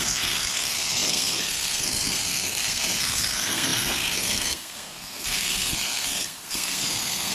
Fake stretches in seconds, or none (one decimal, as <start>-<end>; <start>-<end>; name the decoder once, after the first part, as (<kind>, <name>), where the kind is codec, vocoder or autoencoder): 0.0-7.3 (codec, SNAC)